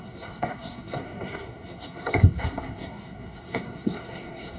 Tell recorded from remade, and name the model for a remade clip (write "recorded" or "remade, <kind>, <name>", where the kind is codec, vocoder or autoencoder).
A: remade, codec, SNAC